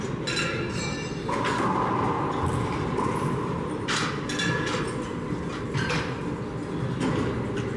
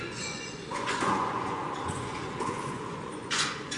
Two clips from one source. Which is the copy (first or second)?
second